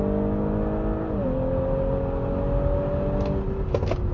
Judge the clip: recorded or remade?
recorded